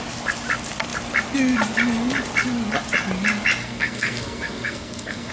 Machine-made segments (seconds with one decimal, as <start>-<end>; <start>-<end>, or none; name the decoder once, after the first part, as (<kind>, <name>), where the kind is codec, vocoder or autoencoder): 3.6-5.3 (codec, SNAC)